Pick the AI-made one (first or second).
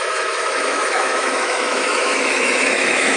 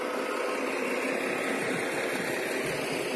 first